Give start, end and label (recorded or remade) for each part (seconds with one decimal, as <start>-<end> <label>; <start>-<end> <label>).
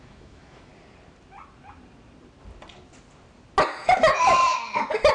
0.0-0.7 remade; 0.7-3.8 recorded; 3.8-4.4 remade; 4.4-5.1 recorded